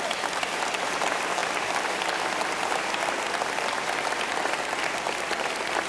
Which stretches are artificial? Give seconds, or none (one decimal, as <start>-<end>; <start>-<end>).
0.0-5.9

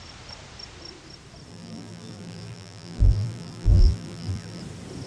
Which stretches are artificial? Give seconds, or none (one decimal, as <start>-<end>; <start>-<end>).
1.5-4.6

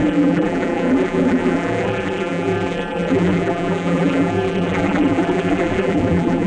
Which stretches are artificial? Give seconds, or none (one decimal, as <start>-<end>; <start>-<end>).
0.0-6.5

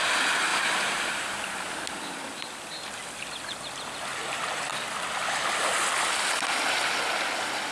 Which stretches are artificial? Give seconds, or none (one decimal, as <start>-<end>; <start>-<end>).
0.5-1.4; 4.2-4.7; 5.2-5.7